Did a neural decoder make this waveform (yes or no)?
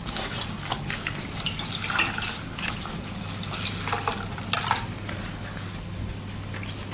no